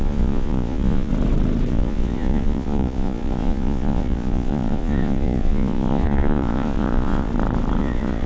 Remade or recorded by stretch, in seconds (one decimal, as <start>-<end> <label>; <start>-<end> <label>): 0.0-1.1 remade; 1.1-1.7 recorded; 1.7-7.3 remade; 7.3-7.8 recorded; 7.8-8.3 remade